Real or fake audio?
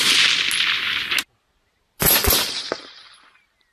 real